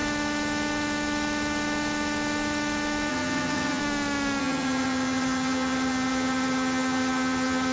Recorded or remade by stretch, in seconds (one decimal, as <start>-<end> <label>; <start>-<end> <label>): 0.0-3.1 recorded; 3.1-3.8 remade; 3.8-4.4 recorded; 4.4-7.7 remade